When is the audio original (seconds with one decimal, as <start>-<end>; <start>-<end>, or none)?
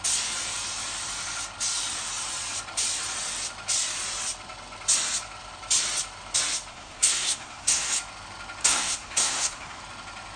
0.0-6.7; 7.9-8.6; 9.8-10.4